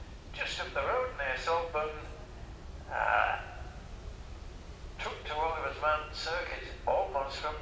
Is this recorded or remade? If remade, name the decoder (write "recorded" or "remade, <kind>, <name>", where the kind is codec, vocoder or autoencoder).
recorded